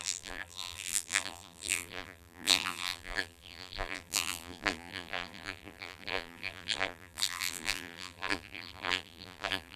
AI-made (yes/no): yes